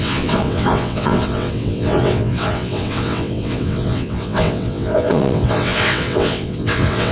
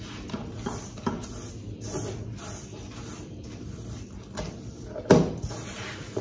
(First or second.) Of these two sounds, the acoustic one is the second